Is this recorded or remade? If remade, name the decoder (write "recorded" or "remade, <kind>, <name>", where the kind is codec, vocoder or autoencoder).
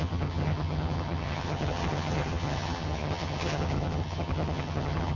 remade, vocoder, HiFi-GAN